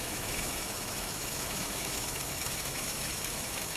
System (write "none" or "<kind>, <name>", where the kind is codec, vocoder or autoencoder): autoencoder, DAC-VAE